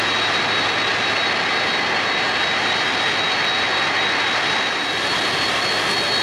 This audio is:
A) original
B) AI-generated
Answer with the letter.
A